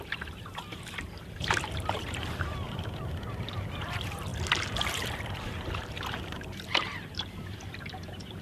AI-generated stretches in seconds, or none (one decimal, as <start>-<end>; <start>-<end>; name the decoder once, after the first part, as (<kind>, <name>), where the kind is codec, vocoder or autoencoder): 0.0-4.3 (vocoder, BigVGAN v2); 4.9-8.4